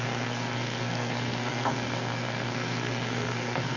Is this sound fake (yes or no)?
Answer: yes